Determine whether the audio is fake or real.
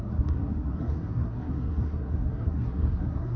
fake